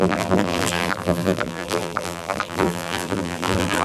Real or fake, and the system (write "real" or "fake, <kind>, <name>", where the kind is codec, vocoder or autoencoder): fake, vocoder, BigVGAN v2